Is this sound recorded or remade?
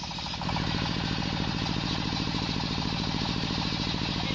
remade